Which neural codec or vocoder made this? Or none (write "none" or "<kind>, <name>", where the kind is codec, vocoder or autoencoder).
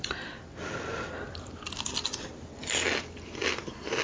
none